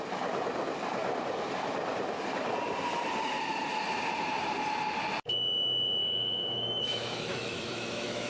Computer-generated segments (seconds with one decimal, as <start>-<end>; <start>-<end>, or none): 6.0-8.3